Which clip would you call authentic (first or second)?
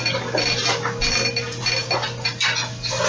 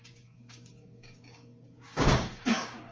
first